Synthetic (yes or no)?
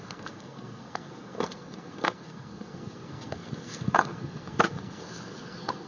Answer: yes